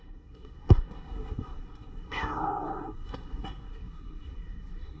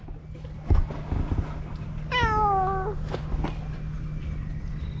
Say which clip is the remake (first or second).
first